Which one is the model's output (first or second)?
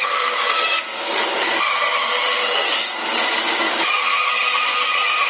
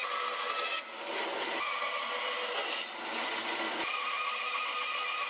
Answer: first